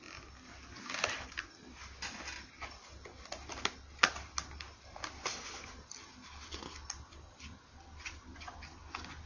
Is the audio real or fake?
real